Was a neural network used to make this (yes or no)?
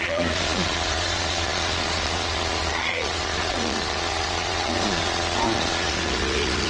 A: yes